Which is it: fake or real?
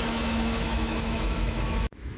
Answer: fake